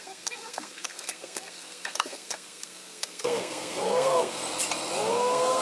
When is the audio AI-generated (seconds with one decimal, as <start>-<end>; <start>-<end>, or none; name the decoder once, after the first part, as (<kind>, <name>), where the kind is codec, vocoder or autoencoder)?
0.0-4.4 (codec, SNAC); 5.1-5.6